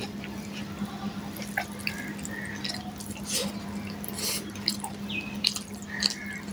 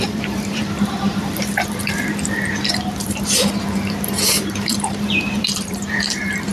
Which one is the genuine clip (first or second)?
first